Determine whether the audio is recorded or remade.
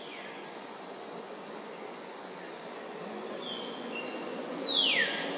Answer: remade